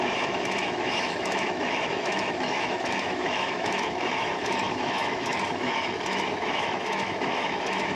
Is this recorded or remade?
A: remade